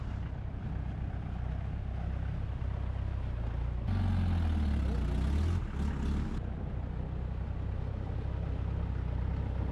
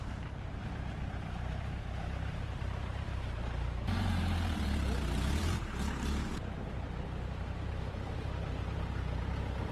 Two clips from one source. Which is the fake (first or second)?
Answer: second